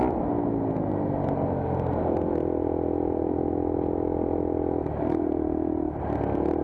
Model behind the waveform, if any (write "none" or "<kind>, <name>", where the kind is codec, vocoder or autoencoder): none